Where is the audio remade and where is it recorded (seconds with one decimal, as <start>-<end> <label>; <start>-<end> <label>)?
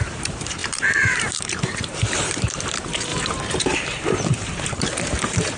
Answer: 0.0-5.6 remade